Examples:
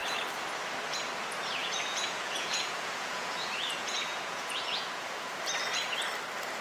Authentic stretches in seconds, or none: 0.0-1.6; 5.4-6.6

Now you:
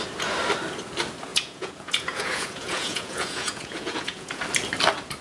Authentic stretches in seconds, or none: 0.0-1.3; 4.4-5.2

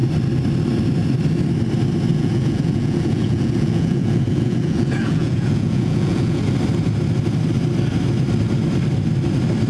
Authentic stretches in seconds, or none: 0.0-2.1; 6.4-9.7

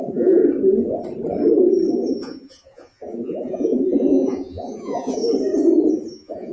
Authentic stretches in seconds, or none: 0.4-1.9; 5.2-5.9

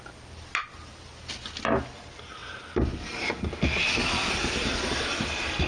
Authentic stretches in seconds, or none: 0.0-5.7

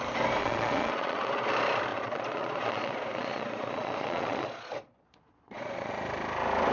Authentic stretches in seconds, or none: 0.0-0.4; 1.5-1.9; 5.9-6.7

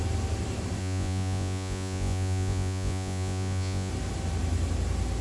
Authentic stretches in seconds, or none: 0.0-0.8; 3.9-5.2